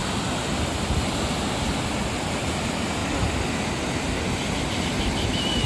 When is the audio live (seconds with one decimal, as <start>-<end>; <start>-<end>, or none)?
0.0-5.7

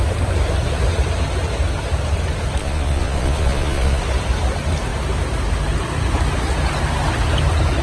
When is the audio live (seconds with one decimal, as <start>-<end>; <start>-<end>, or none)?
0.0-2.6; 4.0-7.8

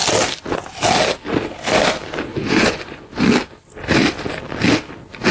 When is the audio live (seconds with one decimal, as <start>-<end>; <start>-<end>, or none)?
0.0-2.3; 3.1-5.3

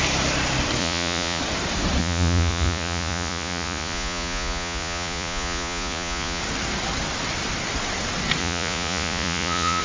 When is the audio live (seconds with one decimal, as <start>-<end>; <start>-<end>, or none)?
0.0-0.8; 1.4-2.0; 6.4-8.4

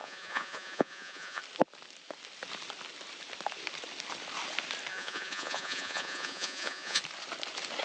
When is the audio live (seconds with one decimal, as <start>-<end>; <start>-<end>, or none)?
1.4-4.9; 7.0-7.8